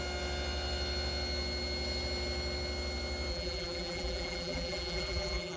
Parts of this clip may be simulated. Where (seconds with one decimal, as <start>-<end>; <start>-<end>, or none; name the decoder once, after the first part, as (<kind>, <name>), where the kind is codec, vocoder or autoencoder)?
3.3-5.6 (vocoder, BigVGAN v2)